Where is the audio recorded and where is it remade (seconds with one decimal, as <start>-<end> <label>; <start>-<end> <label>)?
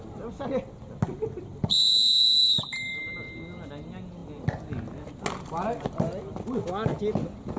0.0-7.6 recorded